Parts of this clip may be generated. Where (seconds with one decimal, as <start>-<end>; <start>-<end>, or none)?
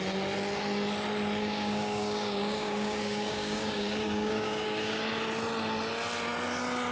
1.4-5.0